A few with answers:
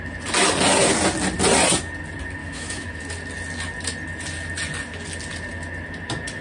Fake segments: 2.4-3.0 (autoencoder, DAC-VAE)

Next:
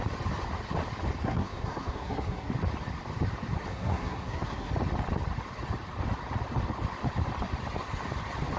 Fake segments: 1.2-2.5 (codec, SNAC); 3.7-4.7

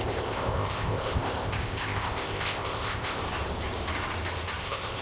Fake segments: 0.0-3.2 (codec, ZipCodec); 4.6-5.0

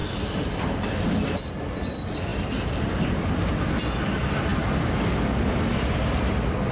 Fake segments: none

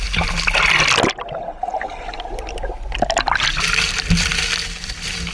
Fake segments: none

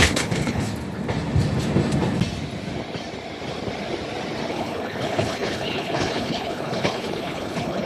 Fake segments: 0.0-0.7 (codec, HILCodec); 4.5-7.9

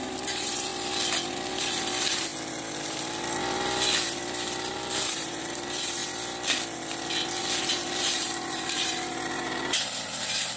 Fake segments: 0.0-0.7 (vocoder, BigVGAN v2); 1.5-2.3; 4.7-6.0; 7.4-10.6